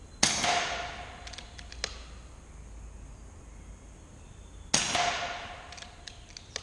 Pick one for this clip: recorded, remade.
recorded